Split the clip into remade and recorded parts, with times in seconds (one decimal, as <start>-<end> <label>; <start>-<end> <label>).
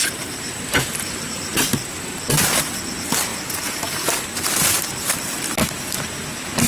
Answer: 0.0-1.6 remade; 1.6-3.3 recorded; 3.3-5.3 remade; 5.3-6.7 recorded